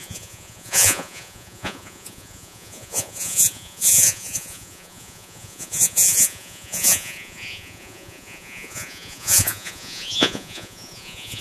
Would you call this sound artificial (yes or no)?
yes